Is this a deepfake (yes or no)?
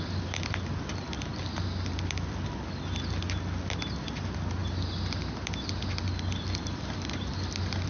no